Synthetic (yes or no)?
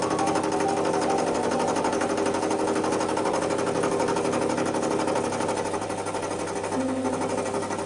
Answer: no